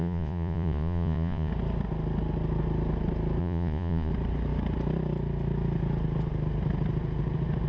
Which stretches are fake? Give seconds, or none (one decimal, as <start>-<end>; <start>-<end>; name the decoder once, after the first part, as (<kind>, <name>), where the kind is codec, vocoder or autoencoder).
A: 0.0-1.5 (vocoder, Vocos); 3.4-4.1

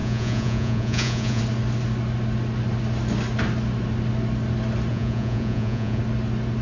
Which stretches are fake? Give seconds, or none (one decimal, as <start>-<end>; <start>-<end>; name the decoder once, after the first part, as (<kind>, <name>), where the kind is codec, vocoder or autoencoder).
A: 0.0-1.4 (vocoder, Vocos); 4.9-6.0

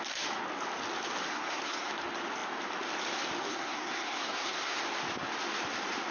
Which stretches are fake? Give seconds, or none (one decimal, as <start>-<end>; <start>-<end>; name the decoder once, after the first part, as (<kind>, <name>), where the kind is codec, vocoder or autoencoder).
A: 1.3-1.9 (codec, SNAC); 3.5-4.8

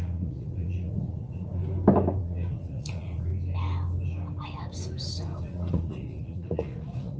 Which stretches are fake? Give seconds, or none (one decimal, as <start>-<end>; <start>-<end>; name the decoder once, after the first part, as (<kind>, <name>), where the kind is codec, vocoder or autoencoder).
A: 0.0-1.6 (vocoder, Vocos); 2.2-3.3; 5.4-7.2